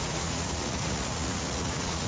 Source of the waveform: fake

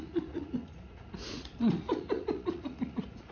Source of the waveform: fake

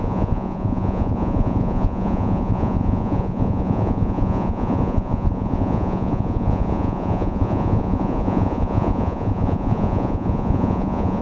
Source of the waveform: fake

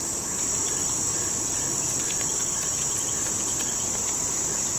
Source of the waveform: real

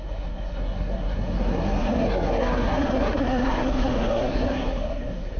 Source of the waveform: fake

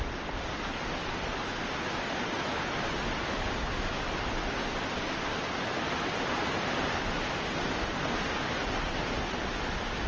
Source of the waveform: real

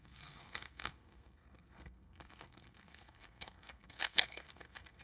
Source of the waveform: fake